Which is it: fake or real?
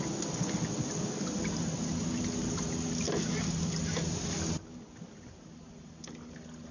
real